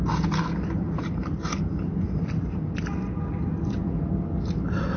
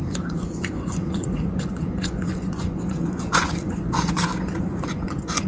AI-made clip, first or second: second